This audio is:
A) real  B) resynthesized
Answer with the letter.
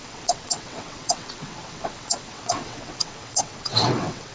B